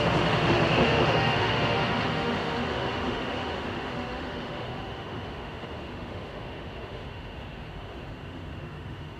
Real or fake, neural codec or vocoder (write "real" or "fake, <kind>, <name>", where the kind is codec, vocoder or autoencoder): fake, autoencoder, DAC-VAE